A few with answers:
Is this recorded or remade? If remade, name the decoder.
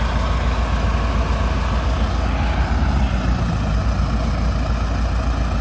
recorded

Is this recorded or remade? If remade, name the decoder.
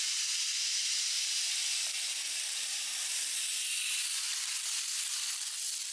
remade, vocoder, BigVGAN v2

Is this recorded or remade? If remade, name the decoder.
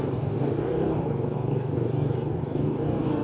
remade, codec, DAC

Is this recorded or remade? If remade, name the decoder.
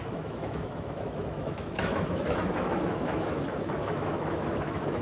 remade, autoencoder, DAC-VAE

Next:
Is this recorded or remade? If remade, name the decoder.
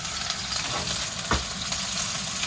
recorded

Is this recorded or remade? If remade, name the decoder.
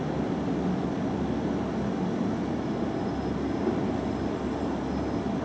recorded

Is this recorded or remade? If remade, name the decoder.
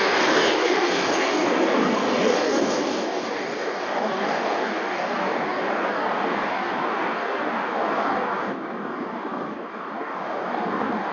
remade, codec, DAC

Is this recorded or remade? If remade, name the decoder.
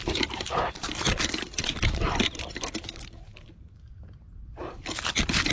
recorded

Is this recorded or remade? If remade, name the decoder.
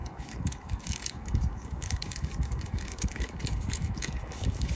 remade, codec, DAC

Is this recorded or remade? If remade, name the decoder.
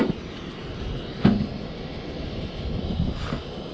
recorded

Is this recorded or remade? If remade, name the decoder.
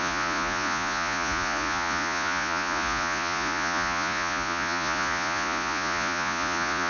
remade, vocoder, Vocos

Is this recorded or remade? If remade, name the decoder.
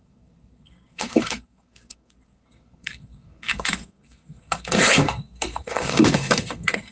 remade, codec, SNAC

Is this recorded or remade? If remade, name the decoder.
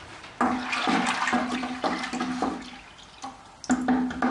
recorded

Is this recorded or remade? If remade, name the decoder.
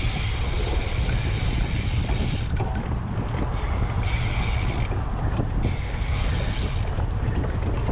recorded